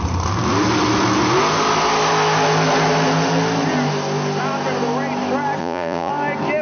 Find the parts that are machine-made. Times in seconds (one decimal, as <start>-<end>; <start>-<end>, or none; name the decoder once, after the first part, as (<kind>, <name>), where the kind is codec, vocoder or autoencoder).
5.6-6.1 (vocoder, Vocos)